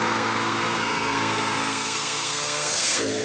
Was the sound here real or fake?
fake